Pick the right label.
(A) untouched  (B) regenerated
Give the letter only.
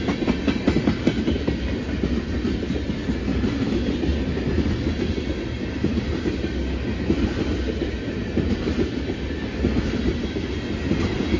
A